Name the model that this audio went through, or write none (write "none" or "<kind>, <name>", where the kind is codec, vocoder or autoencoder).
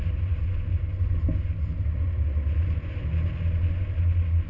none